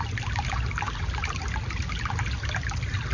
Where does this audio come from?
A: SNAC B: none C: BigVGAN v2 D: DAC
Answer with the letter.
B